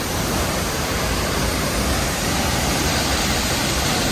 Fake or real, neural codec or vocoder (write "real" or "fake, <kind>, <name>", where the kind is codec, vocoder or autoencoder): fake, vocoder, BigVGAN v2